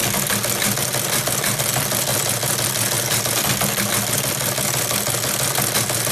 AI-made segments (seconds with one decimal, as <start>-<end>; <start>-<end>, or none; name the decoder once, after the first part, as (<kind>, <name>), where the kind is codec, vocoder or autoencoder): none